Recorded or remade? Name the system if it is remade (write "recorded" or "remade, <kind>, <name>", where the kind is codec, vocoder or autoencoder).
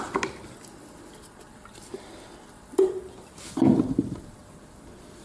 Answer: remade, vocoder, BigVGAN v2